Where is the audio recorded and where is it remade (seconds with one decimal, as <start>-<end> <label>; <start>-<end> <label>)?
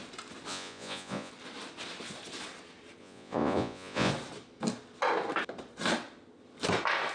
0.0-0.5 recorded; 0.5-1.3 remade; 1.3-3.0 recorded; 3.0-4.1 remade; 4.1-7.1 recorded